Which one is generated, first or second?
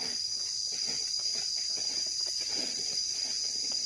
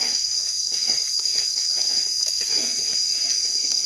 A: second